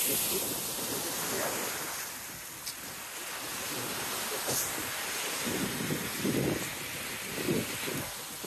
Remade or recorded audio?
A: recorded